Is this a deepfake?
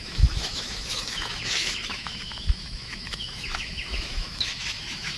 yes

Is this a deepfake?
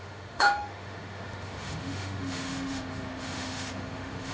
yes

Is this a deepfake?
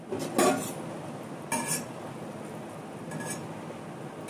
no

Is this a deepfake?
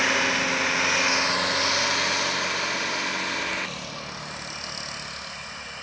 no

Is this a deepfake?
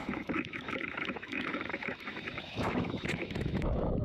yes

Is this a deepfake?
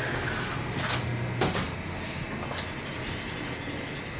no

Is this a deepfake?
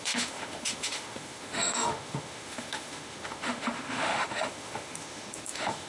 yes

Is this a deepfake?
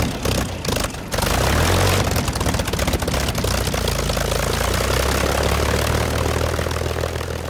no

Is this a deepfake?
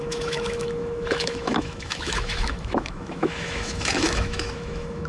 yes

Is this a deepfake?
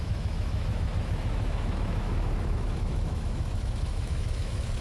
yes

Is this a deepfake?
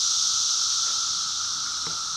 no